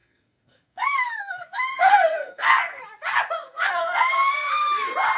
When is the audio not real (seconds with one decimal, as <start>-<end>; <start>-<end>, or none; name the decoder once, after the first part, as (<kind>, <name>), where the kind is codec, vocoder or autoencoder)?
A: 0.0-2.8 (codec, SNAC); 3.4-4.5